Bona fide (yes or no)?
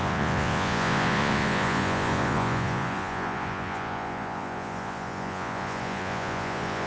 no